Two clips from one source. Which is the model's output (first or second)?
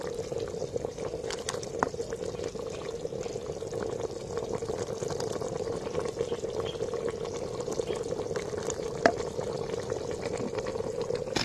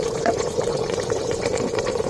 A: second